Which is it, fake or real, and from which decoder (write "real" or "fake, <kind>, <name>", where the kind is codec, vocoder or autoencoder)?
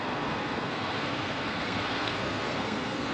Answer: fake, codec, SNAC